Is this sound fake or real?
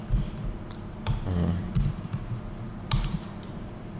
fake